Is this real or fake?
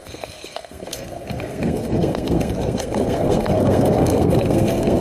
fake